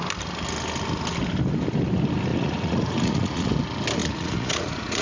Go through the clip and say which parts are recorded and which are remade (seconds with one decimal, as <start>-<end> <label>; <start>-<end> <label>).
0.0-2.3 recorded; 2.3-3.5 remade; 3.5-4.0 recorded; 4.0-5.0 remade